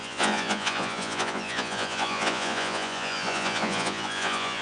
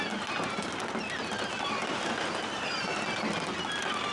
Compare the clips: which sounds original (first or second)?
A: second